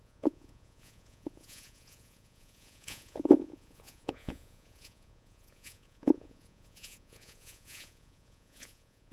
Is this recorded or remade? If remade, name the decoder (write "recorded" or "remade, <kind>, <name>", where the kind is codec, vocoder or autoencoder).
remade, vocoder, Vocos